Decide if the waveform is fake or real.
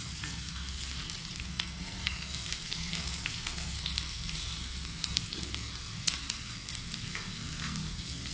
fake